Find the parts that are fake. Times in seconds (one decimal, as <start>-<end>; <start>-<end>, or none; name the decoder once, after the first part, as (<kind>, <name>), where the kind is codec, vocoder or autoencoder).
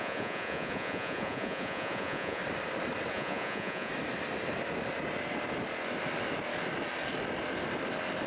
0.0-2.4 (vocoder, Vocos); 3.1-3.9